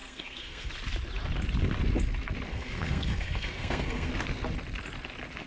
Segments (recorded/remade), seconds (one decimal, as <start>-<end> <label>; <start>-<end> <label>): 0.0-0.7 remade; 0.7-2.5 recorded; 2.5-4.1 remade; 4.1-5.5 recorded